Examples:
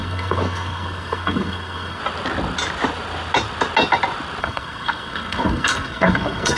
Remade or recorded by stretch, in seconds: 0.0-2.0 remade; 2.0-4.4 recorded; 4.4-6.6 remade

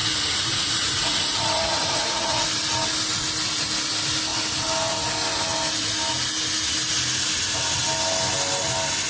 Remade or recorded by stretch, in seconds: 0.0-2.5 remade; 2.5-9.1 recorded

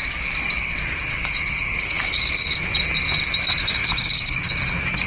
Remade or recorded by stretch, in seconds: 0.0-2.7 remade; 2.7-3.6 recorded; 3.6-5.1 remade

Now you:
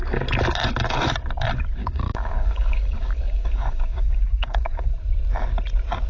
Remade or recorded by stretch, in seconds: 0.0-1.8 recorded; 1.8-4.9 remade; 4.9-6.1 recorded

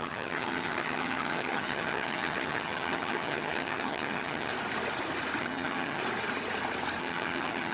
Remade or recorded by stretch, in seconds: 0.0-4.5 remade; 4.5-5.4 recorded; 5.4-6.0 remade; 6.0-7.0 recorded; 7.0-7.7 remade

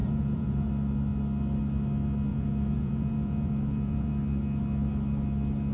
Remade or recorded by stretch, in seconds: 0.0-0.7 remade; 0.7-2.3 recorded; 2.3-4.1 remade; 4.1-5.7 recorded

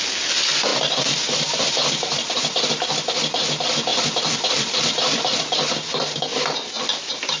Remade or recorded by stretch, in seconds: 0.0-0.7 recorded; 0.7-1.7 remade; 1.7-3.9 recorded; 3.9-5.4 remade; 5.4-7.4 recorded

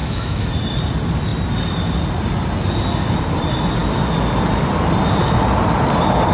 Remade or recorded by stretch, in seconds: 0.0-0.5 remade; 0.5-6.3 recorded